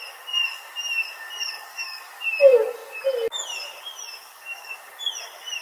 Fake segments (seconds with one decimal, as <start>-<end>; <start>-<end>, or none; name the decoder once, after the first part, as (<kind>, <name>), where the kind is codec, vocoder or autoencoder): 1.4-2.0 (codec, DAC); 4.2-4.9